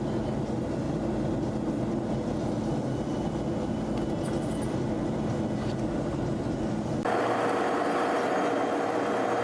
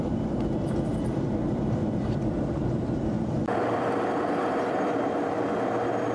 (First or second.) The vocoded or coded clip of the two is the second